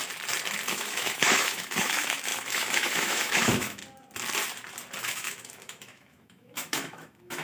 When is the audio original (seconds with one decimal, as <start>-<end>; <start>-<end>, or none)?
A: 0.0-0.7; 3.8-5.0